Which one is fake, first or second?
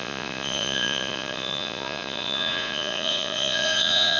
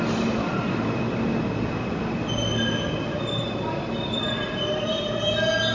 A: first